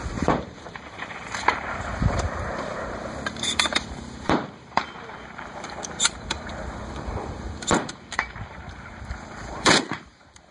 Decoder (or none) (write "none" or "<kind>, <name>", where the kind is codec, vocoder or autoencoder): vocoder, BigVGAN v2